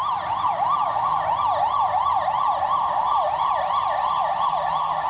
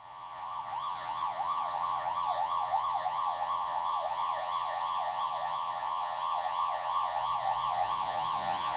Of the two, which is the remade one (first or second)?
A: second